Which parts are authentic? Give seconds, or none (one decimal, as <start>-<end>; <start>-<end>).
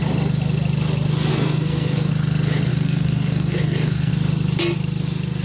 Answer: 0.0-1.3; 2.1-2.7; 4.1-5.4